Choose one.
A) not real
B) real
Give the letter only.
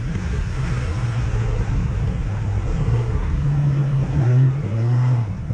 A